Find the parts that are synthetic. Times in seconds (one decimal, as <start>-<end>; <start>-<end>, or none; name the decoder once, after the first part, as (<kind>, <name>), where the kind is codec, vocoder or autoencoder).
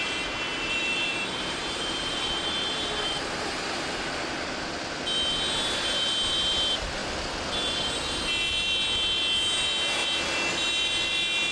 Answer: 0.5-4.2 (vocoder, BigVGAN v2)